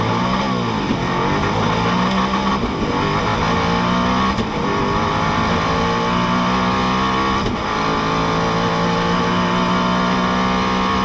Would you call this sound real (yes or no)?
yes